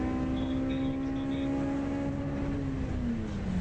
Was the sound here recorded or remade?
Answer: recorded